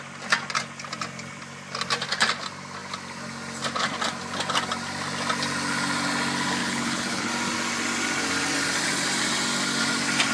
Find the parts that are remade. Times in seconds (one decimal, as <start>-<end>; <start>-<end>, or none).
6.6-7.3